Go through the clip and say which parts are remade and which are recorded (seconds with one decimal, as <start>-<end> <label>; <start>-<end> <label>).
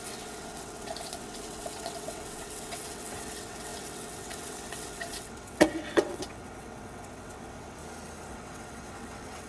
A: 0.0-7.8 remade; 7.8-8.3 recorded; 8.3-9.5 remade